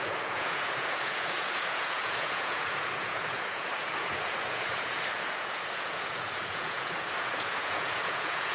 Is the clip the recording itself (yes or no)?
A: no